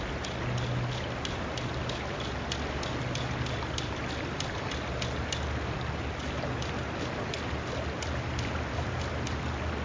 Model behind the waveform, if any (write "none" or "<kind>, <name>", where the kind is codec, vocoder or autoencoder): none